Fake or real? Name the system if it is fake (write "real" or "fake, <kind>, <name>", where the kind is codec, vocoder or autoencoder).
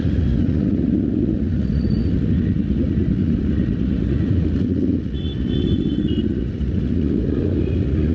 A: fake, vocoder, Vocos